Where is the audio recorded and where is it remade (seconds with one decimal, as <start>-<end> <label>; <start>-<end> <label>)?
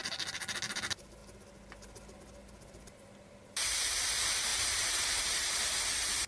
0.0-6.3 recorded